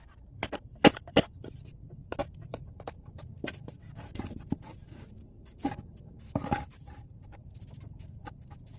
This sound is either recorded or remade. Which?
remade